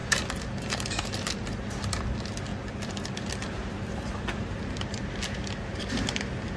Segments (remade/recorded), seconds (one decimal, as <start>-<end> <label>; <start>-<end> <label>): 0.0-6.6 recorded